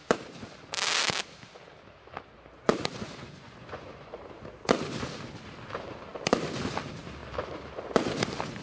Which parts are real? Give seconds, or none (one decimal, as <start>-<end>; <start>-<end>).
0.0-2.9; 4.2-8.6